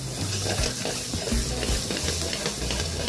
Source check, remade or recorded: recorded